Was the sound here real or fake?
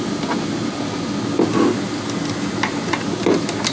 real